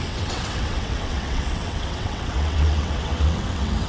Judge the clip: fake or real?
fake